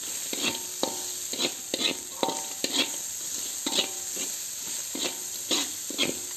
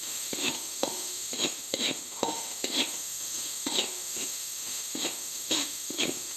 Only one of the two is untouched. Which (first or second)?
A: first